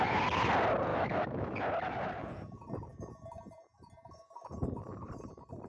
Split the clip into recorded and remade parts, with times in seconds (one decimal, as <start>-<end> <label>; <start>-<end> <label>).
0.0-0.9 recorded; 0.9-1.6 remade; 1.6-5.7 recorded